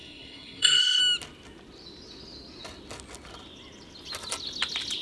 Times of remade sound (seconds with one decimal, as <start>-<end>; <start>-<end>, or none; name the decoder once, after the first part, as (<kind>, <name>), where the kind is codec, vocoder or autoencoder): 0.0-1.0 (codec, SNAC)

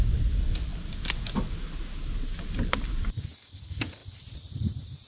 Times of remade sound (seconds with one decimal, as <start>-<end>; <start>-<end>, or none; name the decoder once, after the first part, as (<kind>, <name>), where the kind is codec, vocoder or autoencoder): none

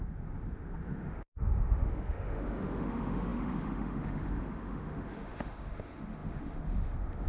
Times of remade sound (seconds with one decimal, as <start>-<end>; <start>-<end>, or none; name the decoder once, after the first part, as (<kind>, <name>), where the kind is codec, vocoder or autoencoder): 0.0-7.3 (autoencoder, DAC-VAE)

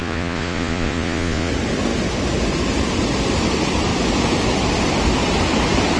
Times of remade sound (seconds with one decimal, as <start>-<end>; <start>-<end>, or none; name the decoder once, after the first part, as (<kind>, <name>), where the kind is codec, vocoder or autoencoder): 0.0-1.5 (vocoder, Vocos)

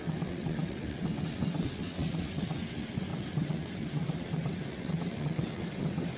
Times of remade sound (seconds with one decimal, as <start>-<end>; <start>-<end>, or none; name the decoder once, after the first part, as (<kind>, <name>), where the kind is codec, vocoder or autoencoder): 0.0-6.2 (vocoder, WaveNeXt)

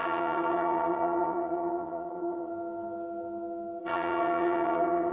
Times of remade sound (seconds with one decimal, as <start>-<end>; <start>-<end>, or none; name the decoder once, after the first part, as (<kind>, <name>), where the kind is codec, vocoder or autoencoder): 0.0-2.5 (vocoder, HiFi-GAN); 3.8-5.1

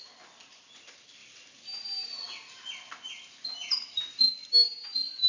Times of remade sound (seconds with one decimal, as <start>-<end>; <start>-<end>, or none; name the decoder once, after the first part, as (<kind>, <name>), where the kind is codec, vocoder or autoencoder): none

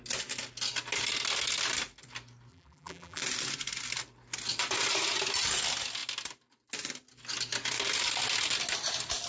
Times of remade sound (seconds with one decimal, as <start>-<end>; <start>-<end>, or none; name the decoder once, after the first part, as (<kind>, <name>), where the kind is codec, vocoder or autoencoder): 2.5-3.2 (vocoder, BigVGAN v2)